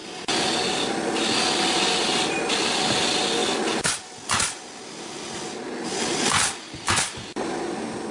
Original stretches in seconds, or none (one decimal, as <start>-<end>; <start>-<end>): 0.0-8.1